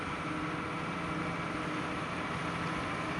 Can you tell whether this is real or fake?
real